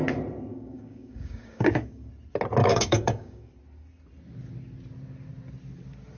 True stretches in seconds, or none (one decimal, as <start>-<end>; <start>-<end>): 0.0-0.5; 2.1-2.6; 3.5-6.2